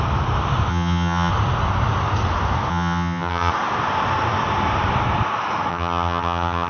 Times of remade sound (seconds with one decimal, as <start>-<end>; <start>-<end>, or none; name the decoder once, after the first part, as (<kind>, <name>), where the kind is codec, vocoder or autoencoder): 0.7-1.3 (vocoder, HiFi-GAN); 2.7-3.5; 5.7-6.7